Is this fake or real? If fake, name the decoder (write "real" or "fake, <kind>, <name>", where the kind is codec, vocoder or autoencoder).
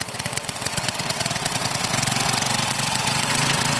fake, vocoder, WaveNeXt